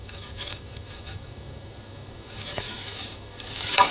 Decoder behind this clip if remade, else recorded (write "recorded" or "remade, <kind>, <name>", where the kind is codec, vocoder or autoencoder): remade, autoencoder, DAC-VAE